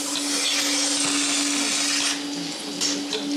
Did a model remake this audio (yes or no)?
no